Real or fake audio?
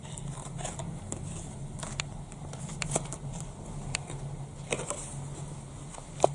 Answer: real